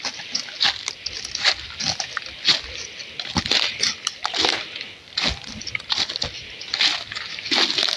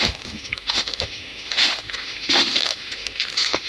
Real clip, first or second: first